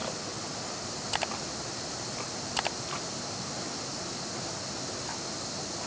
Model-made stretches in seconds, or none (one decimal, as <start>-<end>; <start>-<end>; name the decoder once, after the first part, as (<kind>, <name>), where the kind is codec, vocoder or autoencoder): none